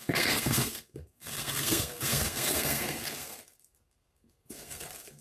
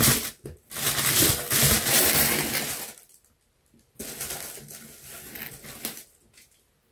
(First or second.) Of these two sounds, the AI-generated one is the first